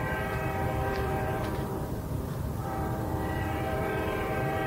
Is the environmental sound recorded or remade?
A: remade